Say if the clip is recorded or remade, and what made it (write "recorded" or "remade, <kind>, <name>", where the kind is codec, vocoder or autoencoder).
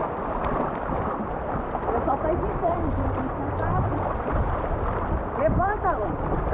remade, vocoder, BigVGAN v2